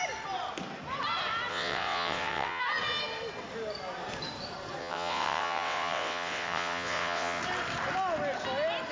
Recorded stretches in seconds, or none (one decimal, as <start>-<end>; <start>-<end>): 0.0-1.5; 2.6-4.8; 7.4-8.9